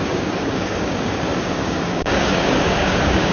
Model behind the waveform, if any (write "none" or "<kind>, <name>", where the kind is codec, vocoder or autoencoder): codec, DAC